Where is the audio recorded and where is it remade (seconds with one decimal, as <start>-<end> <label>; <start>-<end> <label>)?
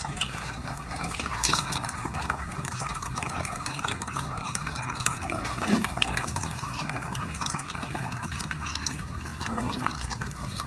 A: 0.0-10.7 remade